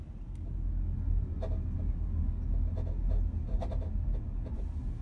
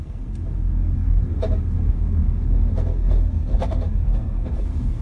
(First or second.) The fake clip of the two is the second